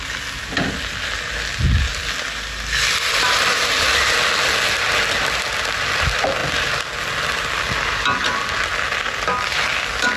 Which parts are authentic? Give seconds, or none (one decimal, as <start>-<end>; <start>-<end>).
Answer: 0.0-10.2